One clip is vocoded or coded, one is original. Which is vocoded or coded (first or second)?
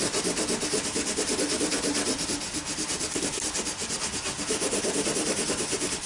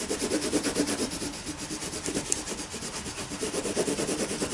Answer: second